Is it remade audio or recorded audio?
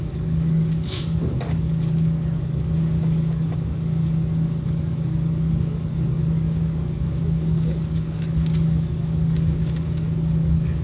remade